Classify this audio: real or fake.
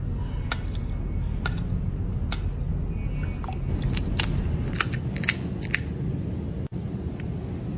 real